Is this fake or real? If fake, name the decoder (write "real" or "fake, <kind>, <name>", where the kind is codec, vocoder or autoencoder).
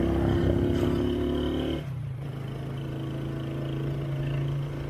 real